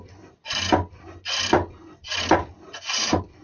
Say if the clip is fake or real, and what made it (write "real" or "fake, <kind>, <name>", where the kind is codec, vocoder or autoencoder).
real